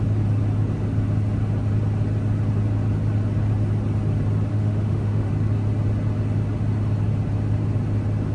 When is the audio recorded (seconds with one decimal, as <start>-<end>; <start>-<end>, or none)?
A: 0.0-4.5; 5.3-8.3